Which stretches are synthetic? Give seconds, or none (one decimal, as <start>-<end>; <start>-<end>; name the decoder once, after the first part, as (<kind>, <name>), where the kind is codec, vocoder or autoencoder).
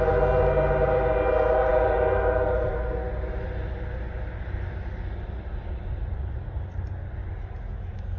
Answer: none